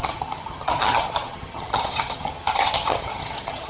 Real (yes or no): no